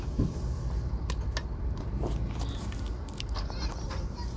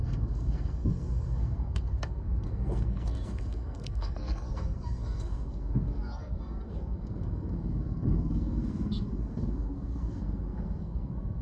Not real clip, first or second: second